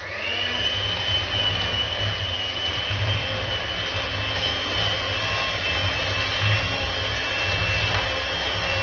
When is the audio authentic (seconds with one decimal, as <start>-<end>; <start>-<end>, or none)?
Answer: 0.0-2.5; 3.6-8.8